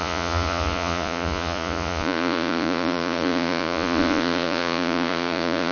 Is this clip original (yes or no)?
no